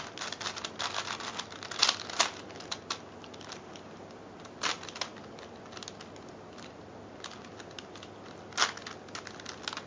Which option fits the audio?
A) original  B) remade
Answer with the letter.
A